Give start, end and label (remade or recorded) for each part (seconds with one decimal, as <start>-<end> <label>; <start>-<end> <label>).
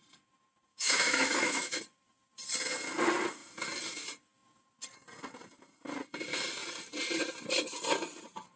0.0-0.7 recorded; 0.7-1.8 remade; 1.8-8.6 recorded